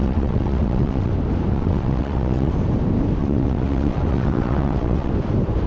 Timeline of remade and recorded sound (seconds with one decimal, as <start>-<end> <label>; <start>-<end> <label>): 0.0-1.1 remade; 1.1-1.5 recorded; 1.5-2.5 remade; 2.5-3.2 recorded; 3.2-5.1 remade; 5.1-5.7 recorded